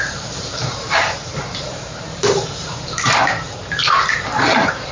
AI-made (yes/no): yes